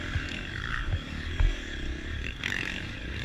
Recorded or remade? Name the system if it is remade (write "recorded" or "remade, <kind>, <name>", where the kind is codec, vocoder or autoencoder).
remade, codec, DAC